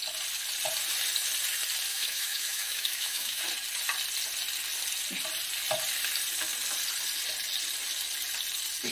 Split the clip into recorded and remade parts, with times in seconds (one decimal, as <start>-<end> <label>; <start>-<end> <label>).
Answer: 0.0-1.9 recorded; 1.9-3.4 remade; 3.4-8.9 recorded